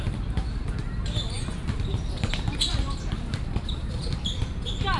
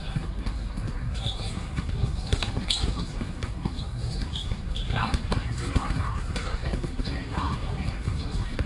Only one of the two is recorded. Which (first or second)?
first